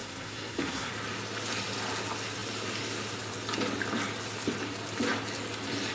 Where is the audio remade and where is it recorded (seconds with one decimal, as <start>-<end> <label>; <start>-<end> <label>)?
0.0-0.9 remade; 0.9-5.9 recorded